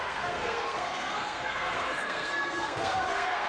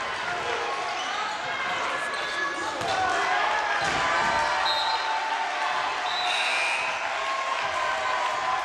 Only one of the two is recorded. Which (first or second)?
second